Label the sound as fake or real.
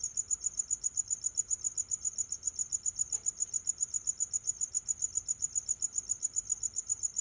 fake